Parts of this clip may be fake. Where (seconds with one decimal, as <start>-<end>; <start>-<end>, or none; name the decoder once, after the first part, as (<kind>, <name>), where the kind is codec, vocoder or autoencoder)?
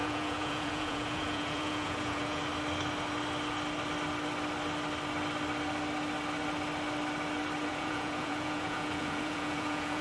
0.0-2.4 (vocoder, Vocos); 7.7-10.0